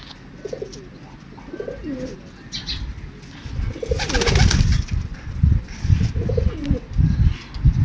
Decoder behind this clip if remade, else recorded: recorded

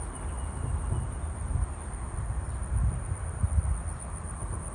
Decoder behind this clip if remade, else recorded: recorded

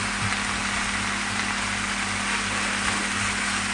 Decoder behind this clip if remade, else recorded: recorded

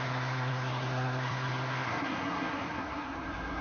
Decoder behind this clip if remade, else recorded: remade, codec, SNAC